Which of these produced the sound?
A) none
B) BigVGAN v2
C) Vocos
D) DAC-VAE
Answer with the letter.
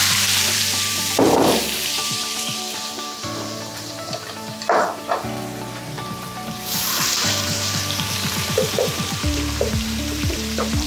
B